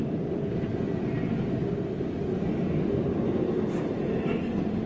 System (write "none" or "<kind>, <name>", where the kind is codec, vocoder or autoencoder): none